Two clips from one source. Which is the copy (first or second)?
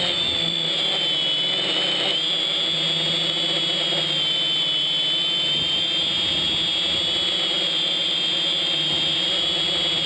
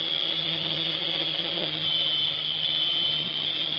second